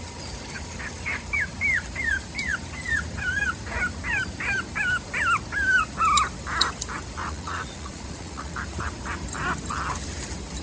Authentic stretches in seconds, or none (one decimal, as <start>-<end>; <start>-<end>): 0.0-7.2; 8.5-10.6